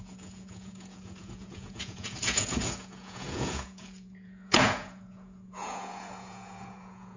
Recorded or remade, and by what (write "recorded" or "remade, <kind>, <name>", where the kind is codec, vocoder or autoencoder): remade, vocoder, Vocos